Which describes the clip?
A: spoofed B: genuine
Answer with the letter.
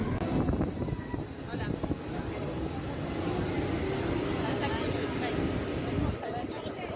B